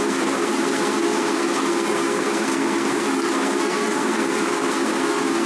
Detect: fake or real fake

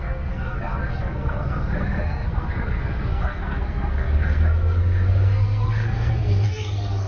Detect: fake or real fake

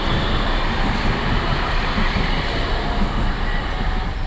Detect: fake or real real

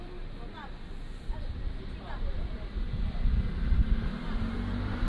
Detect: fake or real real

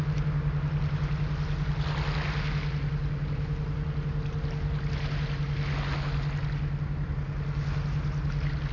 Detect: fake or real real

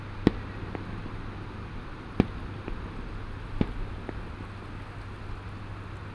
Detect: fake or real real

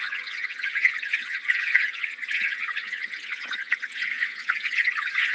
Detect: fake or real fake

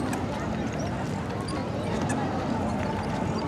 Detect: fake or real real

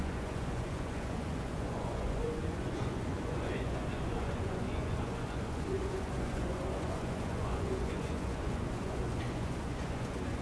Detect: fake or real fake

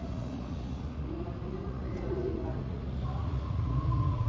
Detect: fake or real fake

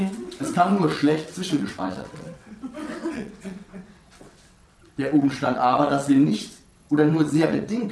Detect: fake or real fake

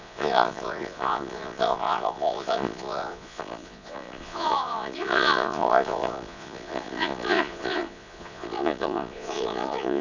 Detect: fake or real fake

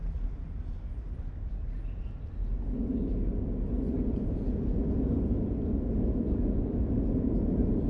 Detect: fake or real real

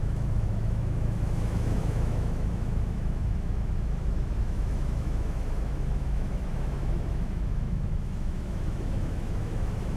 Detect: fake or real fake